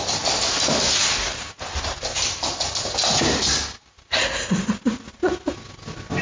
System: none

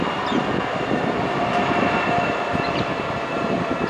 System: none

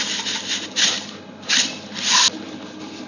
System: none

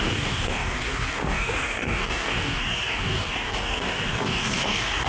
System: codec, DAC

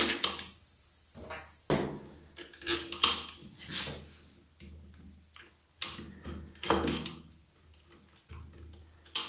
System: none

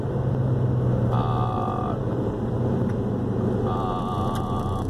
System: none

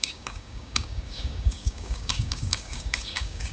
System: codec, DAC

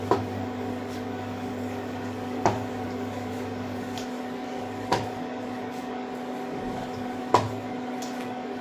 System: codec, DAC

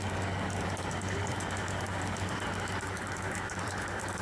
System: codec, DAC